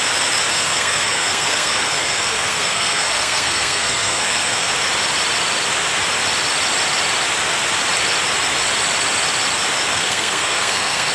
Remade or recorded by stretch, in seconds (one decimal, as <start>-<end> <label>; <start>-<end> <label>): 0.0-0.5 recorded; 0.5-4.7 remade; 4.7-9.9 recorded; 9.9-11.1 remade